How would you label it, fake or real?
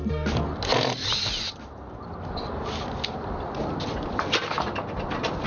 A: real